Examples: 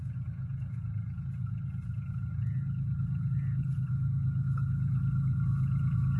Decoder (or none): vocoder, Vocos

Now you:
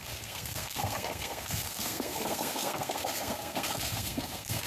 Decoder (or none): codec, SNAC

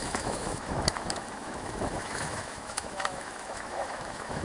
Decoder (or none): autoencoder, DAC-VAE